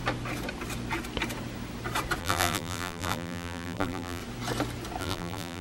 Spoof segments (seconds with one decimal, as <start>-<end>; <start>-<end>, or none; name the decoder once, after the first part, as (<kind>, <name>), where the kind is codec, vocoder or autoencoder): 2.2-4.2 (vocoder, BigVGAN v2); 5.0-5.6